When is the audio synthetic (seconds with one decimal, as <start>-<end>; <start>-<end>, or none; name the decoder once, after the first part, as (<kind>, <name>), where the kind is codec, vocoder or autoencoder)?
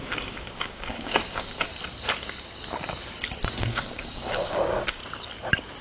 0.0-1.7 (codec, DAC); 3.6-5.0